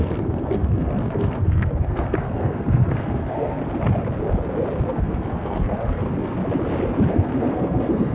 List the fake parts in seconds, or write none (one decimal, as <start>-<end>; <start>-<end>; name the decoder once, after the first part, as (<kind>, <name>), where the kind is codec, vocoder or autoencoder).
0.0-3.6 (codec, SNAC); 4.8-6.4; 7.1-8.1